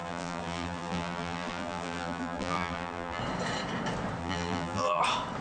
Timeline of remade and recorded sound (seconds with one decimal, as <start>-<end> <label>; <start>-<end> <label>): 0.0-3.2 remade; 3.2-4.2 recorded; 4.2-5.0 remade; 5.0-5.4 recorded